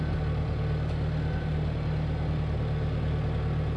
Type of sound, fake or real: real